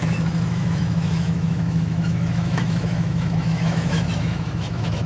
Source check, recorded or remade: remade